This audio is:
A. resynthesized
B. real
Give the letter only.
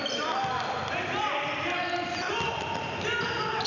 B